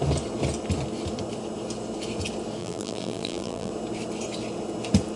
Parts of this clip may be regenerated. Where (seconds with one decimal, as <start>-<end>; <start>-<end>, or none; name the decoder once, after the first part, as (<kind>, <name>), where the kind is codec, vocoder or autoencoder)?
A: 2.6-3.7 (vocoder, BigVGAN v2)